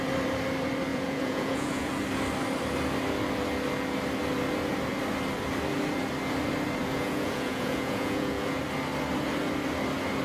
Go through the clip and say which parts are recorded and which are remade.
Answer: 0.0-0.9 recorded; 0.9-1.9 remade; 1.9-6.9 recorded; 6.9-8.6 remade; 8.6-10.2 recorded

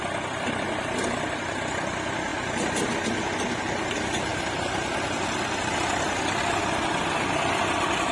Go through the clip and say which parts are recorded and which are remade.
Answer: 0.0-8.1 recorded